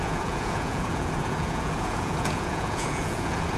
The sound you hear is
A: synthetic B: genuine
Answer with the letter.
A